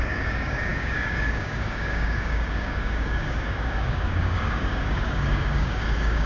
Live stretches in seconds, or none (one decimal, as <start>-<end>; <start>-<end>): none